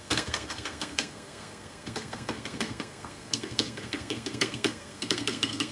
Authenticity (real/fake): fake